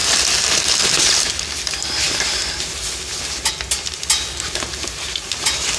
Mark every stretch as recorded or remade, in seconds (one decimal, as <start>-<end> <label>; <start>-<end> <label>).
0.0-5.8 recorded